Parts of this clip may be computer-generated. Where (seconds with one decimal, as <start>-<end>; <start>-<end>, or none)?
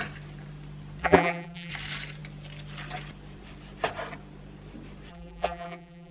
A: 1.0-1.7; 5.1-6.1